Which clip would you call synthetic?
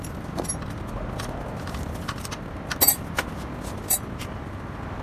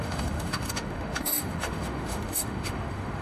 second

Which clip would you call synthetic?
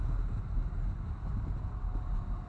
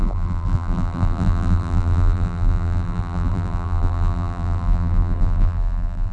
second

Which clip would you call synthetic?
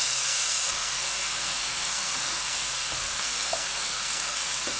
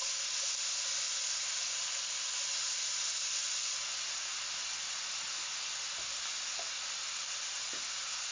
first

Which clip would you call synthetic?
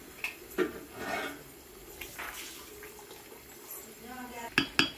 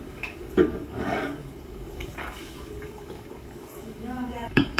second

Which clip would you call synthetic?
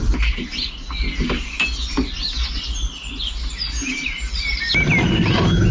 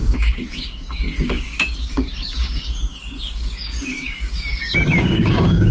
second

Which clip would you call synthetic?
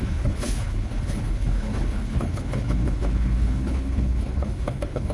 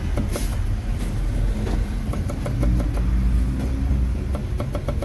first